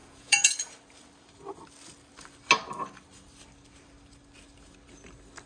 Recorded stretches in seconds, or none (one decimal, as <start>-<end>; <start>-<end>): 0.5-5.5